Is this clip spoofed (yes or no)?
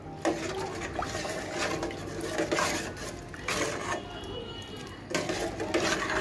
no